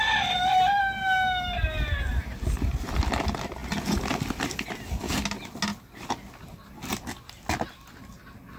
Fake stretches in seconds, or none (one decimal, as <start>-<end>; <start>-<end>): none